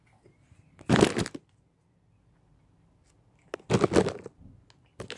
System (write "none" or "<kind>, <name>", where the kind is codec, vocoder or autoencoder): none